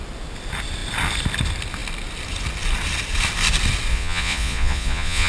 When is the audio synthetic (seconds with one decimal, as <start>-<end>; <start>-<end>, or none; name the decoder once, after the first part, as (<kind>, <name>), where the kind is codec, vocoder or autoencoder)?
3.9-5.3 (vocoder, Vocos)

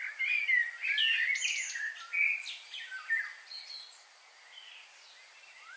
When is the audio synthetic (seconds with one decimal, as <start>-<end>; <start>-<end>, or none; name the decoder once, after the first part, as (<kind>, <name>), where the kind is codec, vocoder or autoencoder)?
none